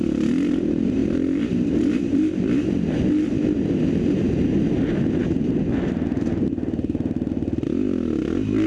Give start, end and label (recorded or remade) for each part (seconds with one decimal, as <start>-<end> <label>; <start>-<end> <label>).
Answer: 0.0-8.7 recorded